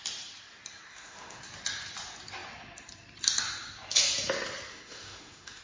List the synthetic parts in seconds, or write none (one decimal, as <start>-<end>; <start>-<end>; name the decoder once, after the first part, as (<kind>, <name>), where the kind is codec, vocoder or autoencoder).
0.9-1.4 (autoencoder, DAC-VAE); 4.7-5.6